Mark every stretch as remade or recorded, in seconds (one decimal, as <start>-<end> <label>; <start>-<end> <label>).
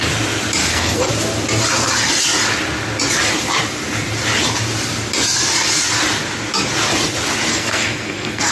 0.0-0.6 recorded; 0.6-1.1 remade; 1.1-7.5 recorded; 7.5-8.5 remade